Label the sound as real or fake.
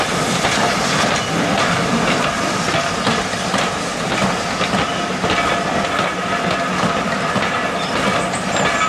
real